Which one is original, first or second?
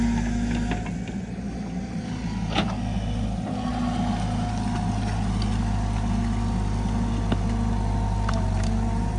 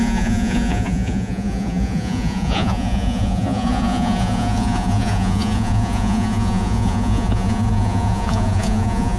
first